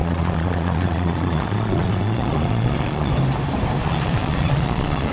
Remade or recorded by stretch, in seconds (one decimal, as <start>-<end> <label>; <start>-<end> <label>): 0.0-3.1 remade; 3.1-3.8 recorded; 3.8-5.1 remade